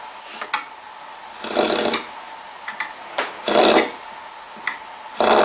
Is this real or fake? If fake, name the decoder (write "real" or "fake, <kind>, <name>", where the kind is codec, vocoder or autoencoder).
real